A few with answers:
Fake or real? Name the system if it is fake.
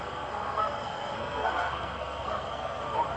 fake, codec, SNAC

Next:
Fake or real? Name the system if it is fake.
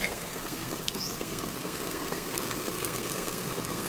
fake, codec, SNAC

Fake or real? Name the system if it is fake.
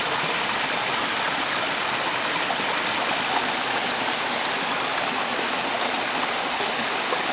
real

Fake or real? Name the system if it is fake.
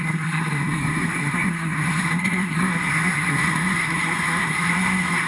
fake, codec, SNAC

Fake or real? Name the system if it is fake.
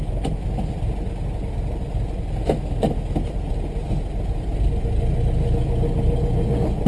real